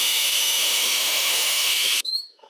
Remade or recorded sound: remade